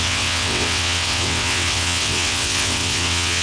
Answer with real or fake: fake